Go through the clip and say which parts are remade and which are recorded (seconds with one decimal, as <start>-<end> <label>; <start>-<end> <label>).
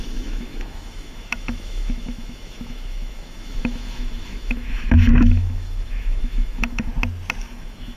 0.0-6.9 remade; 6.9-7.4 recorded; 7.4-8.0 remade